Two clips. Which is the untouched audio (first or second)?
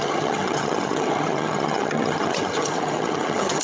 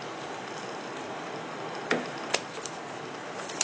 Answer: second